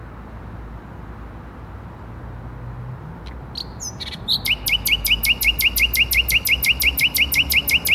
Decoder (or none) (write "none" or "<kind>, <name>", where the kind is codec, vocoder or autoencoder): none